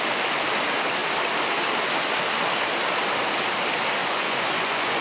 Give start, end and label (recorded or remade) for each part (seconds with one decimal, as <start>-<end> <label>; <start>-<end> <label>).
0.0-4.0 recorded; 4.0-5.0 remade